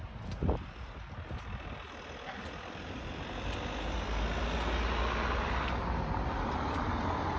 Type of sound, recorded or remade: recorded